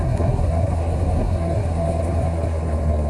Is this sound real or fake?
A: fake